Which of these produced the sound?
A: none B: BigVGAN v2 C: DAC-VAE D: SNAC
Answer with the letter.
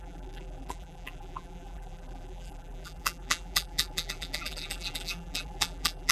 B